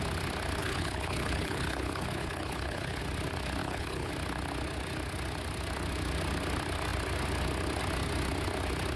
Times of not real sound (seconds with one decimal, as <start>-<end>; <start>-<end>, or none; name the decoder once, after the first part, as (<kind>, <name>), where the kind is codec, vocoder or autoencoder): 0.6-3.0 (codec, HILCodec); 3.6-4.1